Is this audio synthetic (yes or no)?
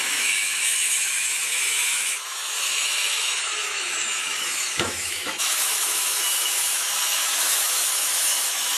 yes